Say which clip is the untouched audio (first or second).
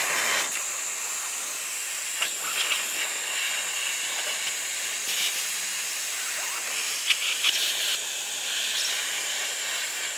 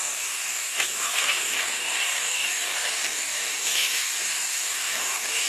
first